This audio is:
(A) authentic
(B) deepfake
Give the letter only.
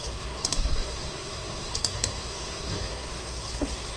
B